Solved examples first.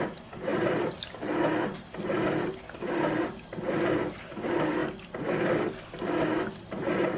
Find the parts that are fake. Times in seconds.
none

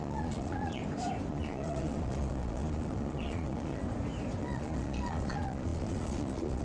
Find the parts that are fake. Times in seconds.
0.0-0.8 (vocoder, Vocos); 1.3-3.8; 4.4-6.6

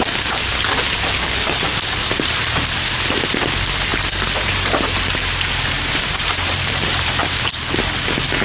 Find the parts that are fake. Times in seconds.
1.7-2.4 (vocoder, BigVGAN v2); 3.9-7.3

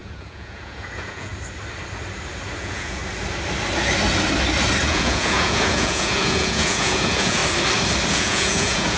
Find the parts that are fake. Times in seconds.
0.0-1.3 (vocoder, Vocos); 2.6-3.0; 4.9-7.4; 8.1-9.0

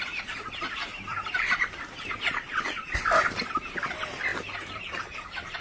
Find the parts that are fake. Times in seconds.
2.3-2.9 (vocoder, Vocos)